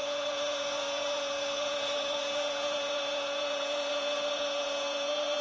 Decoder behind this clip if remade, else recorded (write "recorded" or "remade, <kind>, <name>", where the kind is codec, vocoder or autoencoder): remade, vocoder, Vocos